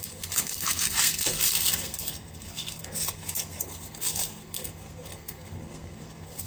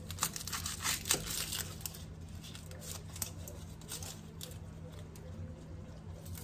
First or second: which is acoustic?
second